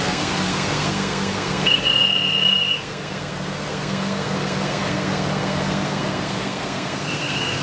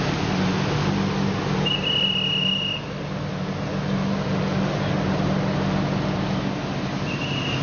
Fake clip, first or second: first